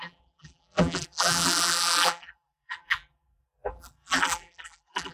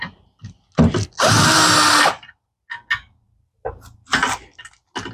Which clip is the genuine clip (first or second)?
second